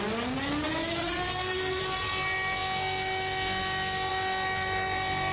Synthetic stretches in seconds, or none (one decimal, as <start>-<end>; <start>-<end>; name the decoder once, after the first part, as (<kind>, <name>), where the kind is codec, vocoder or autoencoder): 0.8-1.8 (codec, SNAC)